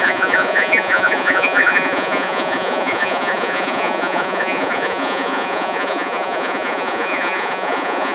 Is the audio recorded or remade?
remade